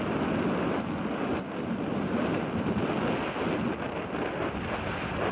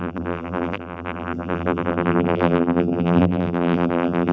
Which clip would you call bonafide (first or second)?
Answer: first